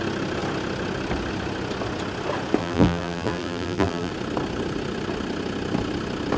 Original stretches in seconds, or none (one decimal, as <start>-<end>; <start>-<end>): 0.0-2.6; 4.1-6.4